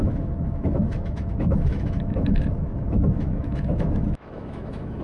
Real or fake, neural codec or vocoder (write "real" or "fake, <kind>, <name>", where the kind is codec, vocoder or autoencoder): fake, autoencoder, DAC-VAE